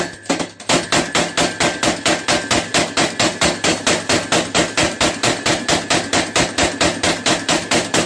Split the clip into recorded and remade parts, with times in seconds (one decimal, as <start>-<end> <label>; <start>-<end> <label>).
0.0-8.1 recorded